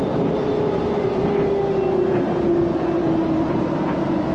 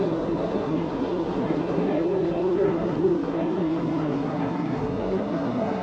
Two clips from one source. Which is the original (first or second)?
first